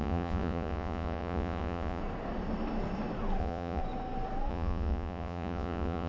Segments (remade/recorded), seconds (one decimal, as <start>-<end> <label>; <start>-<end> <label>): 0.0-2.0 remade; 2.0-3.4 recorded; 3.4-3.8 remade; 3.8-4.5 recorded; 4.5-6.1 remade